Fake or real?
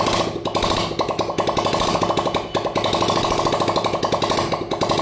real